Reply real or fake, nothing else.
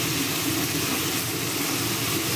real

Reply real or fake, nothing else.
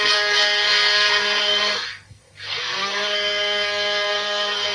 fake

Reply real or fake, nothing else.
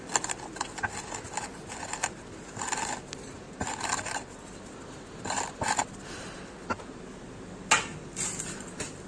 real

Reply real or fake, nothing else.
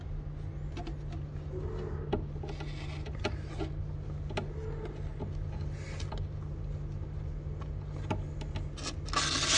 real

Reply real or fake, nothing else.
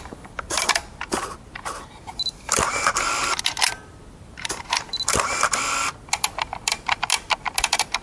real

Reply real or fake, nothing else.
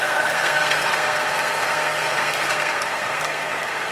fake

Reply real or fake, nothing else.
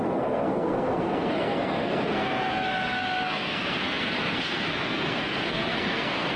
fake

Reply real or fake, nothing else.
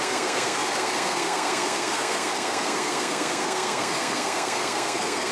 fake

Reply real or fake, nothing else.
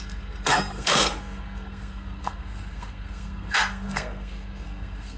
fake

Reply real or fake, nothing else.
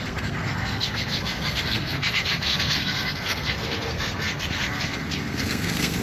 fake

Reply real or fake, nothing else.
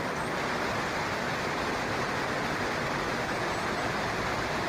real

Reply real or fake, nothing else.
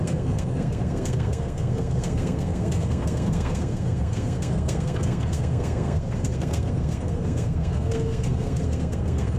fake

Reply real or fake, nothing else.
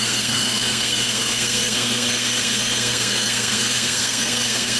fake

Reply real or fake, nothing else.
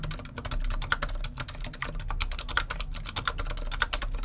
real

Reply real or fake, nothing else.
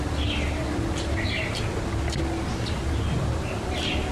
real